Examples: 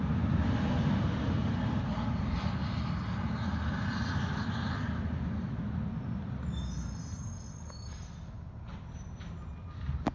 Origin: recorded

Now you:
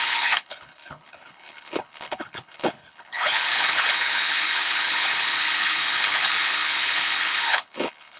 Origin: remade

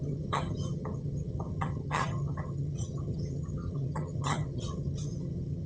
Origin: remade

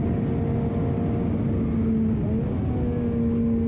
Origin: recorded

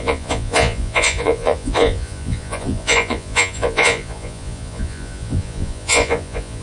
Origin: remade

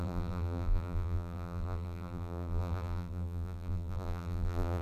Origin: remade